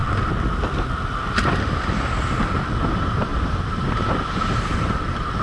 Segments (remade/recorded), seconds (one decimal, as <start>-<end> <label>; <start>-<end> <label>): 0.0-2.8 recorded; 2.8-5.4 remade